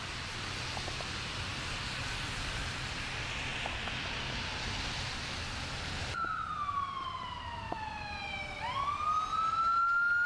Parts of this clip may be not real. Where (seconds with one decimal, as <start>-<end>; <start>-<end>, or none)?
none